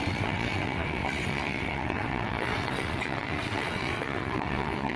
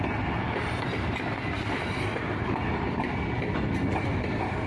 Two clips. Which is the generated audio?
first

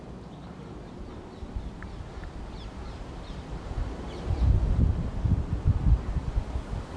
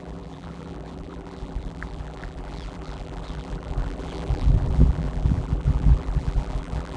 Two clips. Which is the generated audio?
second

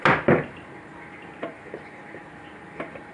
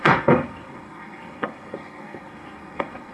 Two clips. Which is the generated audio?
second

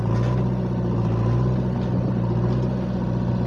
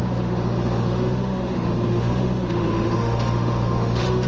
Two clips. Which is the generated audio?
second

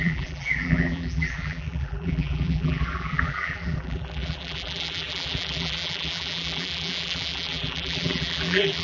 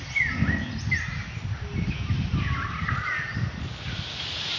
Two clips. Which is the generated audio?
first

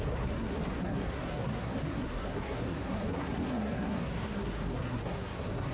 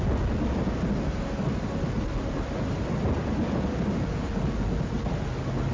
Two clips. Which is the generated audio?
first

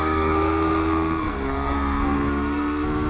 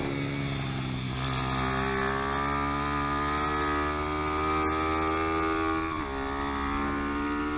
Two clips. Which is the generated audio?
first